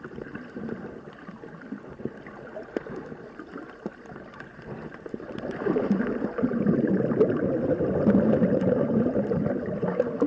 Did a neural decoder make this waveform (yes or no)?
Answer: no